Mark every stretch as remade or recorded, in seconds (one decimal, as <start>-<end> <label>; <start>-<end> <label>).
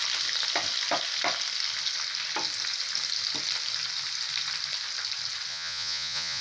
0.0-5.5 recorded; 5.5-6.4 remade